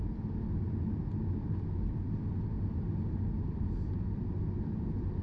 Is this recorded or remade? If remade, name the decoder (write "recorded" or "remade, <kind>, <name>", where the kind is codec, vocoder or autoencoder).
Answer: recorded